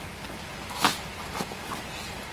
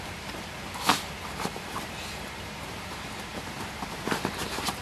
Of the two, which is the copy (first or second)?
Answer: second